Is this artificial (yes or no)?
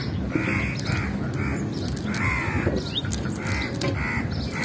no